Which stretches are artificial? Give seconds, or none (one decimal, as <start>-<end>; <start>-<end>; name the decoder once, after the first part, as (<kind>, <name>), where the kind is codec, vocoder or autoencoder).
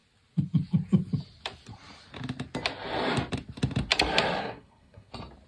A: 4.4-5.1 (codec, SNAC)